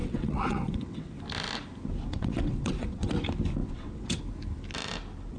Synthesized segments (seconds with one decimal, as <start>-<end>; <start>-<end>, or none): 0.0-1.1; 2.1-3.2; 3.6-4.2